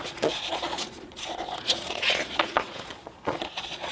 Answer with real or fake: fake